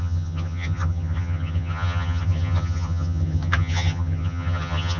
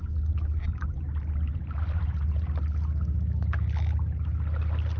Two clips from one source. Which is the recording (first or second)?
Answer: second